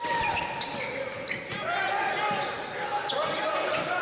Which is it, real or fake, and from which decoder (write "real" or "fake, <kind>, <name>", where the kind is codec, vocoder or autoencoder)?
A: real